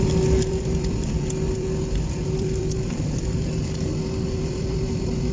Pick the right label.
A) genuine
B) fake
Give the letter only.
B